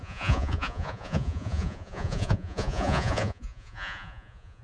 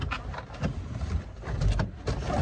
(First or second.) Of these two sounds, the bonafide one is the second